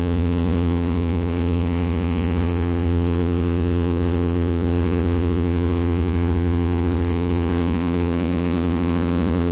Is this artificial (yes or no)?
yes